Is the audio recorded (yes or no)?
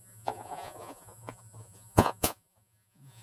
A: no